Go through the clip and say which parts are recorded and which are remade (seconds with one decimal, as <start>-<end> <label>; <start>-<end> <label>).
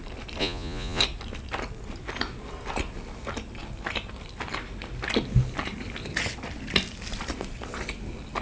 0.0-0.4 recorded; 0.4-1.0 remade; 1.0-8.4 recorded